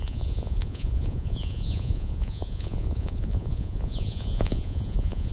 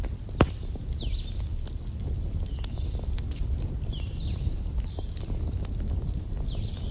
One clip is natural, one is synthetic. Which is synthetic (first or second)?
first